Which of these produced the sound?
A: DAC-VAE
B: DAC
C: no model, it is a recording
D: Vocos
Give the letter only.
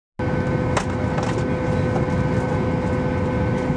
C